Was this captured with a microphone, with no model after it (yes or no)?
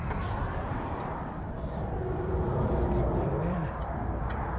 no